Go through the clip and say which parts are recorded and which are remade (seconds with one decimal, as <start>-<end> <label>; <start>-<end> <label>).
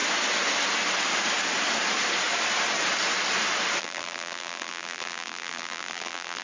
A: 0.0-3.8 recorded; 3.8-6.4 remade